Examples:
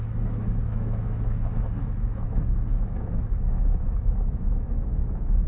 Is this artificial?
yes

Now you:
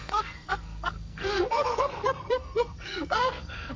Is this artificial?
yes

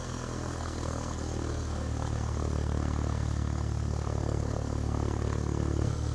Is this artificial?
yes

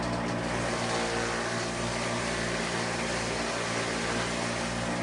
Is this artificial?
no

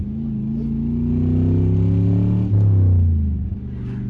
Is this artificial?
no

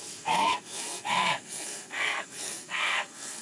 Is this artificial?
yes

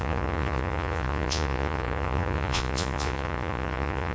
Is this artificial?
yes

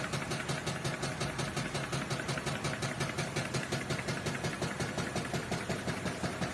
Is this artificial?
no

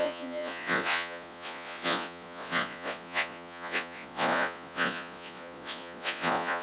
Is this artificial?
yes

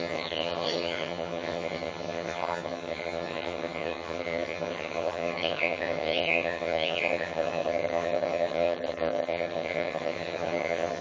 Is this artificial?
yes